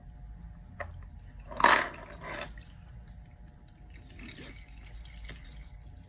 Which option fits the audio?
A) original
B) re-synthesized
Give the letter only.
A